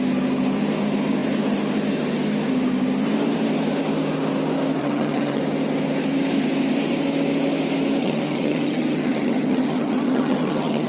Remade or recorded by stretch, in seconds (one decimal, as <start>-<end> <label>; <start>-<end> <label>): 0.0-4.8 recorded; 4.8-5.4 remade; 5.4-8.0 recorded; 8.0-10.9 remade

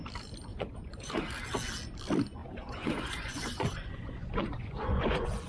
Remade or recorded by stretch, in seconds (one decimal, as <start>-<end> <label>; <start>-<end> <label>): 0.0-0.5 recorded; 0.5-1.1 remade; 1.1-2.4 recorded; 2.4-5.5 remade